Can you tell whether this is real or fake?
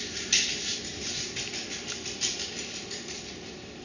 real